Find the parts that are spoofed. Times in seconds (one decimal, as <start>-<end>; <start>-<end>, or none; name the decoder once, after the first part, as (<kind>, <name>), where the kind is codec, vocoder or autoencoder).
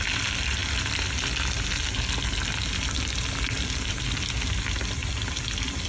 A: none